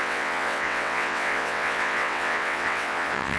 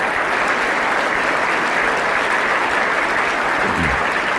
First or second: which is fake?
first